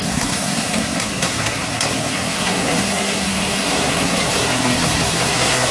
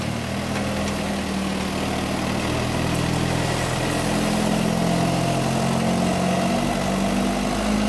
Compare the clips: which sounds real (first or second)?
second